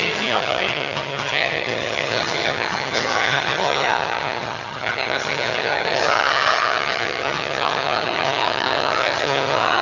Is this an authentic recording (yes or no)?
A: no